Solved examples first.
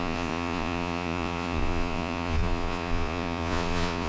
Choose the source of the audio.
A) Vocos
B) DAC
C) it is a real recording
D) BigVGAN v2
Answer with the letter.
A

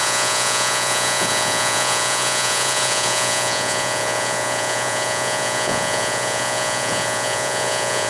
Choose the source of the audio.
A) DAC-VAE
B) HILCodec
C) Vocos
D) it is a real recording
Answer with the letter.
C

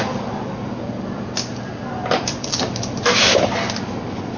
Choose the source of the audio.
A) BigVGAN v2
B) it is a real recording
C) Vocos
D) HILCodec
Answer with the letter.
B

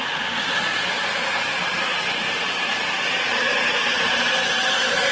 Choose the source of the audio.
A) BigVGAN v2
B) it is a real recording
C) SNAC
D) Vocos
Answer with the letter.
B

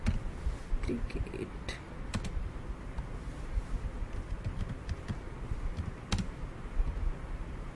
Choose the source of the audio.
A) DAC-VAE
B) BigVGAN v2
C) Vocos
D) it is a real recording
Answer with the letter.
D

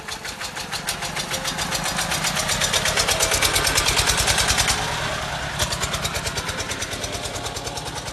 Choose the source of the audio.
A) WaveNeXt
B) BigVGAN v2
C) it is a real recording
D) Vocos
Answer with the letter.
C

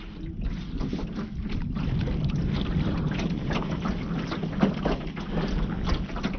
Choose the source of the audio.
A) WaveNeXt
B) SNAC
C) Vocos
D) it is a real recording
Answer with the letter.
D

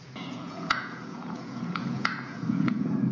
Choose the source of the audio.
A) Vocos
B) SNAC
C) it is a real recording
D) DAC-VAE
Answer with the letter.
A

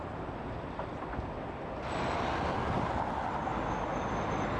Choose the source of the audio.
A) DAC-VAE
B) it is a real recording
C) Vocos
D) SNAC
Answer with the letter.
B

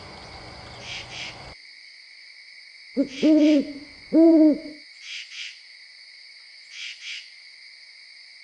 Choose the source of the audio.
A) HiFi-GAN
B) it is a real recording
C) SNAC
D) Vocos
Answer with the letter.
D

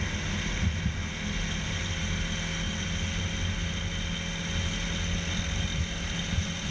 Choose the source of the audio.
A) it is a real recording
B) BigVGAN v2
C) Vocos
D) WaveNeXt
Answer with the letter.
A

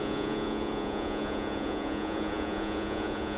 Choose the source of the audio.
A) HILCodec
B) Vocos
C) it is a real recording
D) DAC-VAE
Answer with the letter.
B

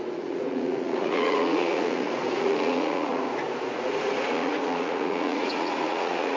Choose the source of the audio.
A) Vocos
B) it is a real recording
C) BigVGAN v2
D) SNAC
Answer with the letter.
A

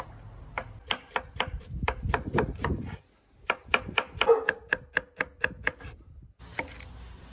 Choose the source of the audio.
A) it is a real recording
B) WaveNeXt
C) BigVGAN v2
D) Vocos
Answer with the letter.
A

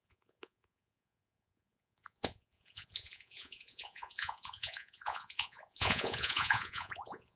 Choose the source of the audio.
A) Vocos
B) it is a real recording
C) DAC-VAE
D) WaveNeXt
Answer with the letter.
A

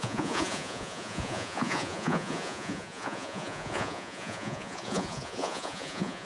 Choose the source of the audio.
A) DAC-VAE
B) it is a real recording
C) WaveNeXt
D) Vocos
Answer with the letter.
D